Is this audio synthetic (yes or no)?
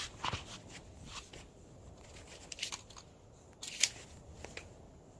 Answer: no